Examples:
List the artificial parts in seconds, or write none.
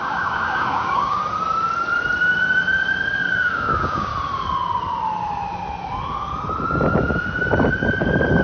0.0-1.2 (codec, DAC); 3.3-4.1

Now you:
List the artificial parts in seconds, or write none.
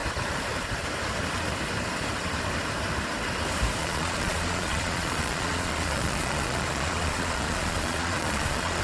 3.8-8.8 (vocoder, Vocos)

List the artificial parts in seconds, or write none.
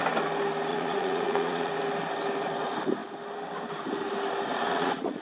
0.7-1.7 (vocoder, Vocos); 4.5-5.2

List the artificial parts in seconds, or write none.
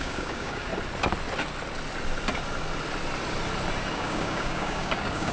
0.0-0.7 (codec, DAC); 3.9-5.3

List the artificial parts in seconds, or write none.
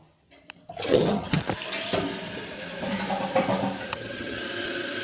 0.9-1.4 (vocoder, HiFi-GAN); 3.9-4.4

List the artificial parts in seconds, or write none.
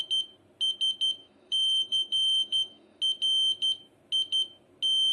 1.2-3.0 (autoencoder, DAC-VAE)